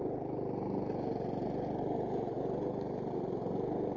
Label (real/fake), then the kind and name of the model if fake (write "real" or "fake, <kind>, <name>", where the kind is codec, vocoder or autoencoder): real